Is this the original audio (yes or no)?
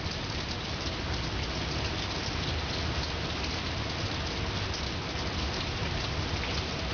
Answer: yes